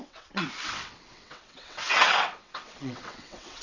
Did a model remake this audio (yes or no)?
yes